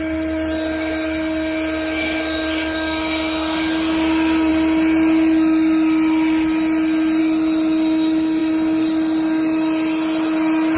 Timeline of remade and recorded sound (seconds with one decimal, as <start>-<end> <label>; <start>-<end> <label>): 0.0-10.8 recorded